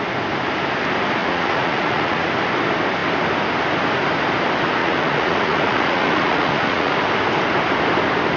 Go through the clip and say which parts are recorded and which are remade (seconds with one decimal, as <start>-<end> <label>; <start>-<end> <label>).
0.0-1.2 recorded; 1.2-2.3 remade; 2.3-4.8 recorded; 4.8-6.9 remade; 6.9-8.4 recorded